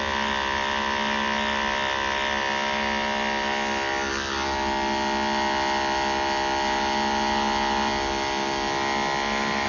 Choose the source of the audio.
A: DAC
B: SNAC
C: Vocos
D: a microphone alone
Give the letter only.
D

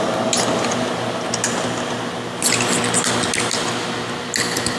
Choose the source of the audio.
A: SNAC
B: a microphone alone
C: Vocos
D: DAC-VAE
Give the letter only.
B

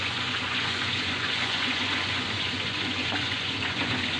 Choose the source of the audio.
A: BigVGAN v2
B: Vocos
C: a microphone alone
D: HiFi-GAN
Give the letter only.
B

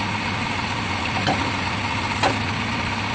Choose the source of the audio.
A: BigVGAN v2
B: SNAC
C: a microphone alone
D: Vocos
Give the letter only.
C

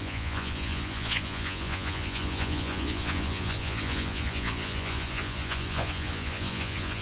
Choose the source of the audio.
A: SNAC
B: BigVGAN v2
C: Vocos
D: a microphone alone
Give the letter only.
C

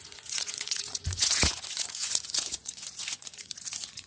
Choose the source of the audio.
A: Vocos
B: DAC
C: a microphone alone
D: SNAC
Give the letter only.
A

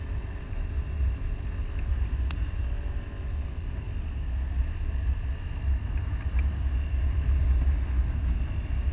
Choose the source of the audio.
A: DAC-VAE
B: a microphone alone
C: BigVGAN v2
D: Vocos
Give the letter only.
B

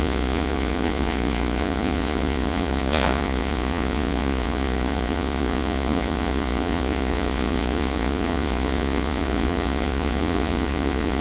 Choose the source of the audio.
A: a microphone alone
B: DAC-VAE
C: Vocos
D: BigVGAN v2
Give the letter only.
C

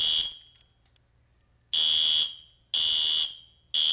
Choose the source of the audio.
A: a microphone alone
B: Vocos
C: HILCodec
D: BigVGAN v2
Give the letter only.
A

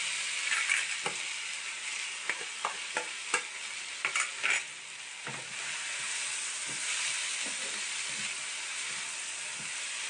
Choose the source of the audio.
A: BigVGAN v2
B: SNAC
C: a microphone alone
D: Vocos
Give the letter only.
C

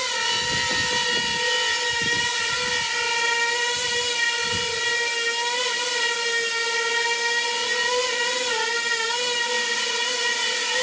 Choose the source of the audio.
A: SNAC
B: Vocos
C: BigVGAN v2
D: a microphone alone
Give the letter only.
D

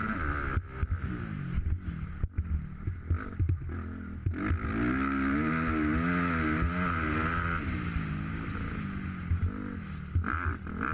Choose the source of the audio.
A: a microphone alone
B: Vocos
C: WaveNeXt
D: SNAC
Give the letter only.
A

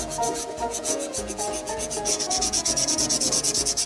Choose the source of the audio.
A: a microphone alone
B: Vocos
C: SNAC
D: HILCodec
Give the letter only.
B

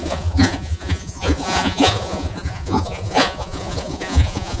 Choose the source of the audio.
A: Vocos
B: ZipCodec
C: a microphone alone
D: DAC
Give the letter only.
A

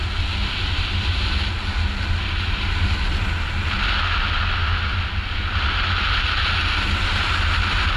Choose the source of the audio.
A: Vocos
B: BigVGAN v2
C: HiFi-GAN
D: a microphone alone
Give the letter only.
D